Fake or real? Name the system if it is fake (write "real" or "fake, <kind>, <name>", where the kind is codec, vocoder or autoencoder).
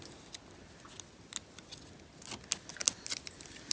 real